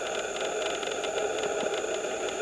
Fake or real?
real